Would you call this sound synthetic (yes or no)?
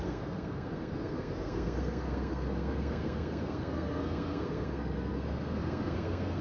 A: yes